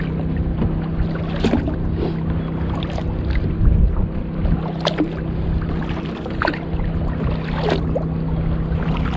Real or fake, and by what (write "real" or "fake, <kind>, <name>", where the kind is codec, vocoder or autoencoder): real